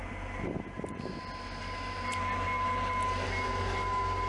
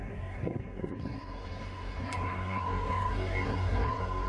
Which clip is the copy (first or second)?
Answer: second